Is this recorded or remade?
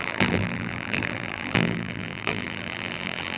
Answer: remade